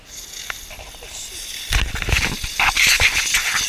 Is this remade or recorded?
recorded